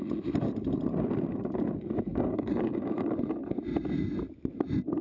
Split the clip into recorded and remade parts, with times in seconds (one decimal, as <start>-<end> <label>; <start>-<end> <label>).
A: 0.0-2.1 recorded; 2.1-3.0 remade; 3.0-5.0 recorded